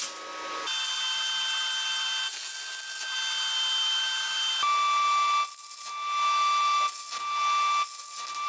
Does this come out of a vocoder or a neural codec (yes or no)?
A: no